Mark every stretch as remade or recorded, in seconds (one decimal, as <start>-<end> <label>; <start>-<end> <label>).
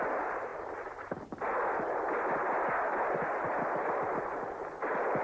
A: 0.0-5.2 recorded